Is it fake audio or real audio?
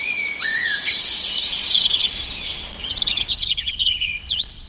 fake